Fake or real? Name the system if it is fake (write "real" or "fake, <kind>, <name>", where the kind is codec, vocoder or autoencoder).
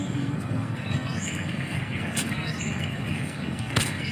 fake, codec, SNAC